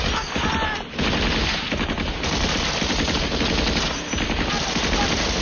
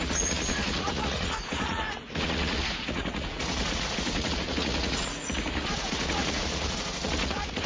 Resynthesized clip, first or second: second